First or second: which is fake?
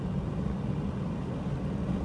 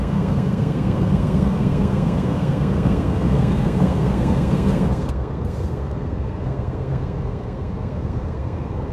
second